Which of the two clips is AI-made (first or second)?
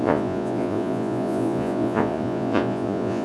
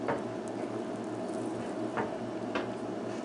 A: first